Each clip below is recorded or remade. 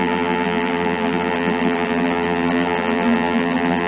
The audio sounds remade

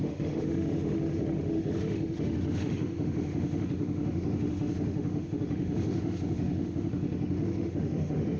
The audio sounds remade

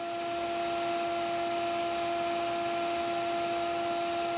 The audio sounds recorded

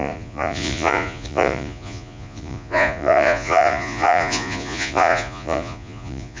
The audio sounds remade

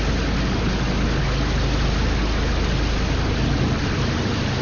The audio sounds recorded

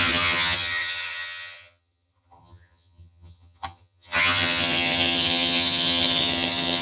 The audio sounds remade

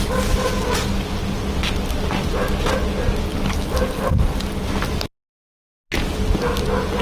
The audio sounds recorded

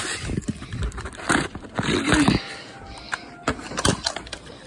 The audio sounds recorded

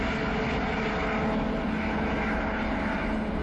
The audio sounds recorded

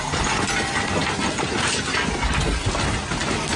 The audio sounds recorded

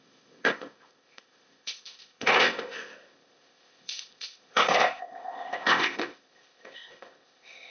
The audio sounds remade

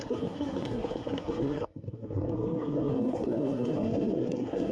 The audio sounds remade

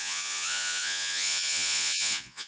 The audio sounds remade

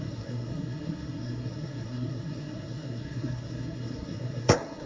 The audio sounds remade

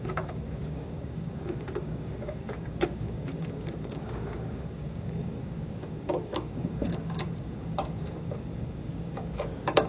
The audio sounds remade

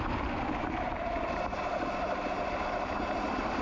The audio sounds recorded